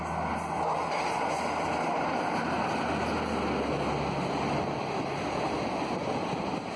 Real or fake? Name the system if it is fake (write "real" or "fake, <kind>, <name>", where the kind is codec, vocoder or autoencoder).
real